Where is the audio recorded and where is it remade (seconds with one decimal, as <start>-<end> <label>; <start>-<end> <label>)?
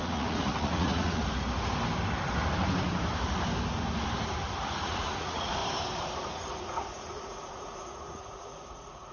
0.0-1.2 remade; 1.2-4.7 recorded; 4.7-5.6 remade; 5.6-6.3 recorded; 6.3-9.1 remade